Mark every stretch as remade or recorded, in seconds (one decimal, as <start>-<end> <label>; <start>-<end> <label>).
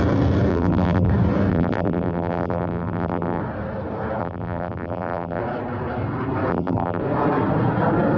0.0-0.5 recorded; 0.5-1.1 remade; 1.1-1.5 recorded; 1.5-3.4 remade; 3.4-4.2 recorded; 4.2-5.4 remade; 5.4-6.5 recorded; 6.5-7.0 remade; 7.0-8.2 recorded